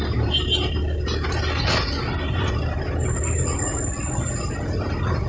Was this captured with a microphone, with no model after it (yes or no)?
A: yes